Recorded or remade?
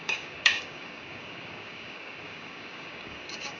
remade